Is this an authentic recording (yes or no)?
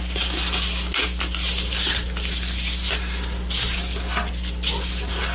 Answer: yes